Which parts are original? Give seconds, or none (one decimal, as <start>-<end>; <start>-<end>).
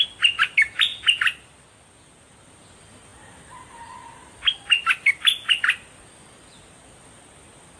0.0-7.8